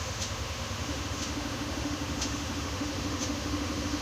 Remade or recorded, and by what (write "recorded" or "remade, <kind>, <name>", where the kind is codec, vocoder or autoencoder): remade, autoencoder, DAC-VAE